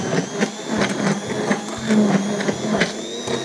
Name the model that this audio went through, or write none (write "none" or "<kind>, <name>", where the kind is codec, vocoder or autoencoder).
none